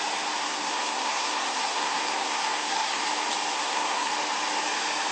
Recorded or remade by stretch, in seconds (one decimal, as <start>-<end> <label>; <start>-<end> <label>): 0.0-0.4 recorded; 0.4-3.0 remade; 3.0-3.5 recorded; 3.5-4.1 remade; 4.1-5.1 recorded